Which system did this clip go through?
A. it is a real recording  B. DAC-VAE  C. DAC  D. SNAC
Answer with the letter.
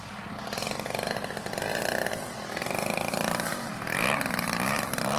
A